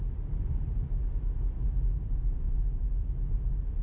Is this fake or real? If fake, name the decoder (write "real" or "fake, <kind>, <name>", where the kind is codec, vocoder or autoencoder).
real